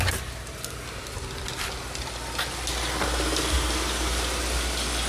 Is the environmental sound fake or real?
real